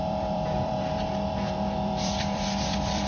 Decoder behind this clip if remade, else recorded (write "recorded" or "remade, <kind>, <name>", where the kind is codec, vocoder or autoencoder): remade, vocoder, BigVGAN v2